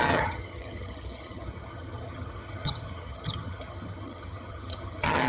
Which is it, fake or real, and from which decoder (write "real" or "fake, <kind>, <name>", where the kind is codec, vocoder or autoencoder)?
fake, vocoder, HiFi-GAN